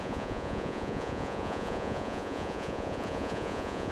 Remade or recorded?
remade